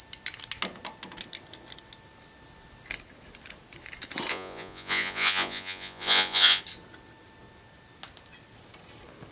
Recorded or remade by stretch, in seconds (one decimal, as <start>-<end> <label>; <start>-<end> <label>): 0.0-4.3 recorded; 4.3-6.6 remade; 6.6-9.3 recorded